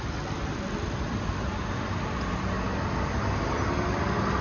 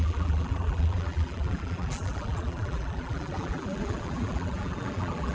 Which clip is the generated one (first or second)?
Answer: second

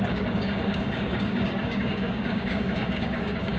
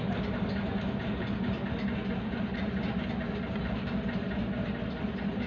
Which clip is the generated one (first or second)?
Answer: first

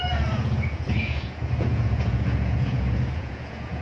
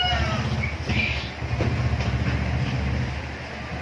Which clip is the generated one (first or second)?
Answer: first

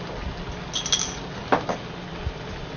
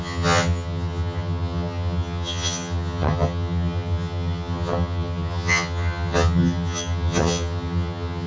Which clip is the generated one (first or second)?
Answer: second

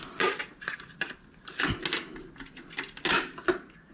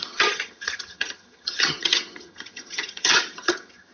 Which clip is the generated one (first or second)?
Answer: second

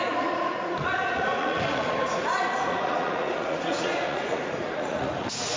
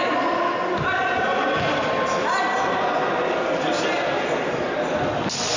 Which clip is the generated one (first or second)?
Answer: first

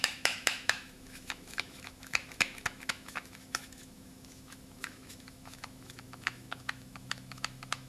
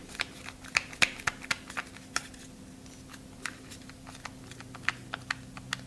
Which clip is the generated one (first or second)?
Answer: first